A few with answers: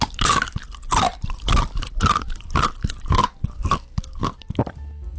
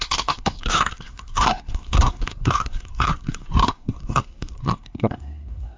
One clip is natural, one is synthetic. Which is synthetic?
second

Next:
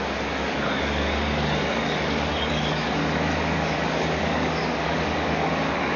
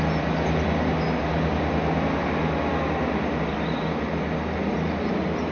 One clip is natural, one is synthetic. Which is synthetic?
first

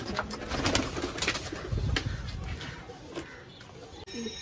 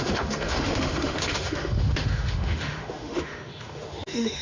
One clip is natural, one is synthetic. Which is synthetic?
second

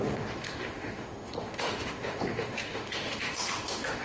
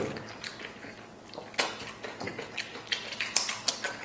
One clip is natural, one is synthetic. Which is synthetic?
first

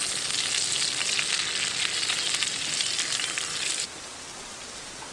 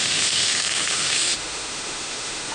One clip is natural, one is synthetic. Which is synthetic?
second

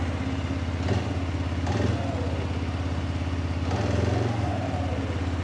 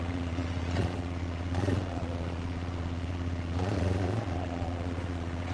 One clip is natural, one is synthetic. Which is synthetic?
second